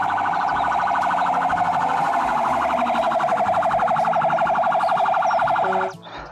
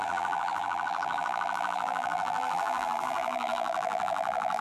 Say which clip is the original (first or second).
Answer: first